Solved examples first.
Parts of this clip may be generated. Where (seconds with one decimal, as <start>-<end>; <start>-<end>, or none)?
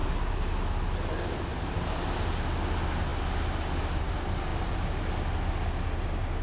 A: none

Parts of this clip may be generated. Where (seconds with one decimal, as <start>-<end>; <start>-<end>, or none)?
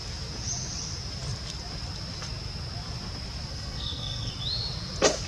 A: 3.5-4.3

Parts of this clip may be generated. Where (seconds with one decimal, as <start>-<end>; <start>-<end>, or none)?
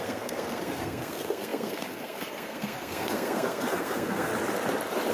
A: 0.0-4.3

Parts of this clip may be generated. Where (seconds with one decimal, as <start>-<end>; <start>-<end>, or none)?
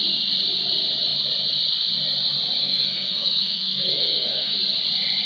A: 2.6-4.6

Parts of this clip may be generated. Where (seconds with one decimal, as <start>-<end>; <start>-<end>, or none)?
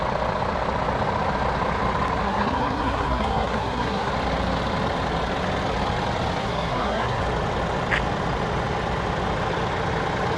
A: 2.2-4.1; 6.4-7.2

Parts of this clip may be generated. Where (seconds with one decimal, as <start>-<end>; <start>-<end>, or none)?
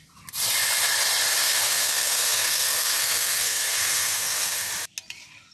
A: 1.4-4.7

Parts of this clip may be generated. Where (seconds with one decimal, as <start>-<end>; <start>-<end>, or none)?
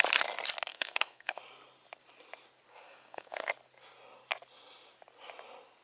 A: 0.7-1.4; 2.7-3.5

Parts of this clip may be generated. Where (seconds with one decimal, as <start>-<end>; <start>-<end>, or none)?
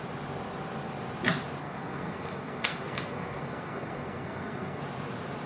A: 1.6-4.8